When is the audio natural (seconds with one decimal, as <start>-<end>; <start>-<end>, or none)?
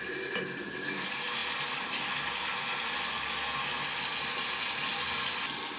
0.0-5.8